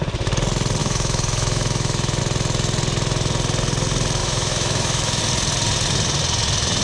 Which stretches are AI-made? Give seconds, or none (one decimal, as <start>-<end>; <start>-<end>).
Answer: 0.8-2.2; 4.2-5.2